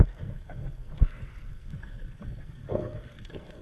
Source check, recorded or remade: remade